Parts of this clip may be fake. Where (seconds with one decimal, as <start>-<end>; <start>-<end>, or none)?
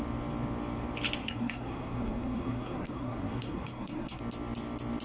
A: 1.2-4.2